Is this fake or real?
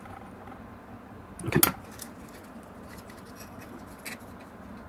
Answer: real